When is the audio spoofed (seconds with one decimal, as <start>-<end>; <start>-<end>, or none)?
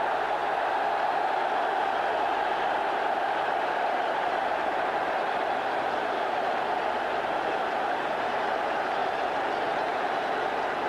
0.0-0.4; 3.7-10.9